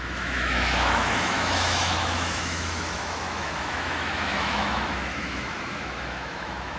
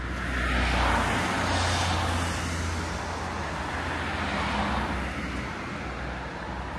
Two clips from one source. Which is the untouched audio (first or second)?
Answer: second